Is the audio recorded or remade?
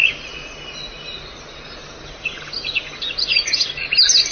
recorded